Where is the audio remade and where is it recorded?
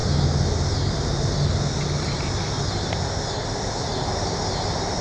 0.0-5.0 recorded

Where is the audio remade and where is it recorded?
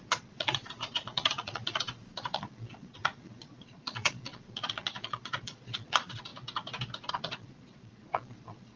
0.0-6.3 remade; 6.3-7.1 recorded; 7.1-8.8 remade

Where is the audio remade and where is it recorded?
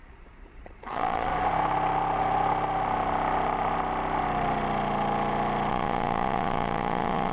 0.0-1.3 remade; 1.3-5.7 recorded; 5.7-7.3 remade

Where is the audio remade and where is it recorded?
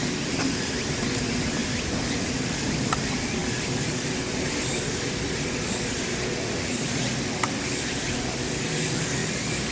0.0-9.7 recorded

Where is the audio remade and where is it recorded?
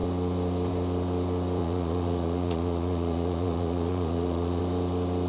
0.0-1.6 recorded; 1.6-4.6 remade; 4.6-5.3 recorded